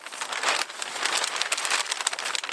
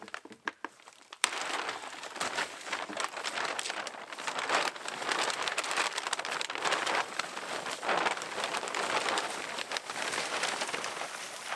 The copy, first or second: second